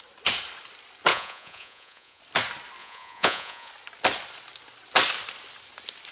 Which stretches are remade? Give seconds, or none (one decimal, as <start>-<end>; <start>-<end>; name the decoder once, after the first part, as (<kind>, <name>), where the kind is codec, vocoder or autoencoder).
1.1-2.2 (vocoder, Vocos); 2.8-3.7